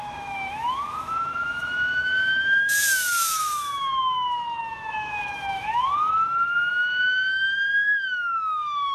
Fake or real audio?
fake